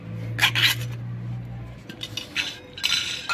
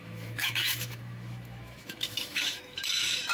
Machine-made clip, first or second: second